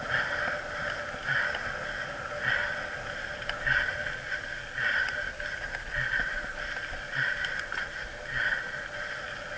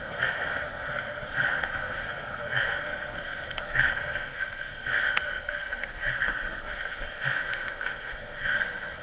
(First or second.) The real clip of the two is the first